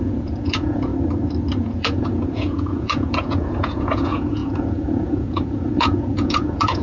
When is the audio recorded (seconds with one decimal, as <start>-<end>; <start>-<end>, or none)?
0.9-1.6